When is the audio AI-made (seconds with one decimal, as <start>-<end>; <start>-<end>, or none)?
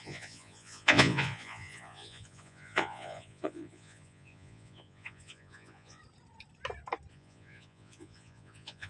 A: 0.0-6.0; 7.1-8.9